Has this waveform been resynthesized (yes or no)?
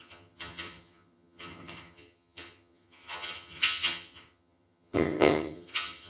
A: yes